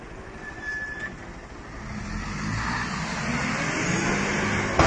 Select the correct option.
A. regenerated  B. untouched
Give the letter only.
B